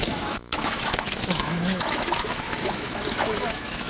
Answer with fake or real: fake